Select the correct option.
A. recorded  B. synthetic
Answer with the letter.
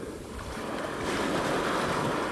A